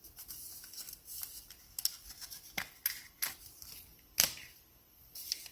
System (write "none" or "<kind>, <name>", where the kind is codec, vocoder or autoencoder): none